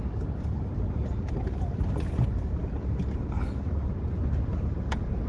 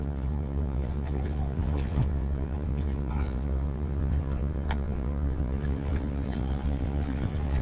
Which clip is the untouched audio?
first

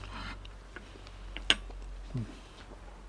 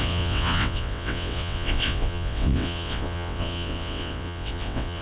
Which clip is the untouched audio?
first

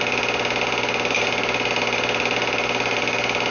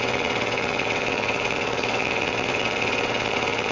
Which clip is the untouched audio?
first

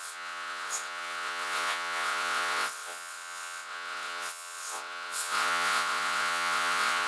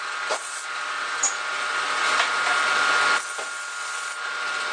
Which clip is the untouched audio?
second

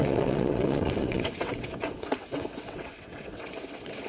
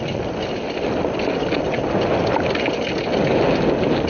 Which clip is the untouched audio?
second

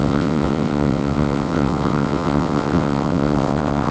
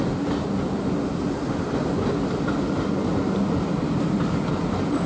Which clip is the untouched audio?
second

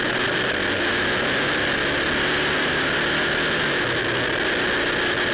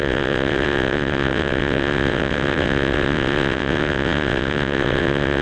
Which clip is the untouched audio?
first